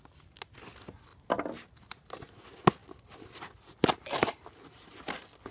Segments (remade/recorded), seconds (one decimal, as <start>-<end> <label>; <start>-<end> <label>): 0.0-5.5 recorded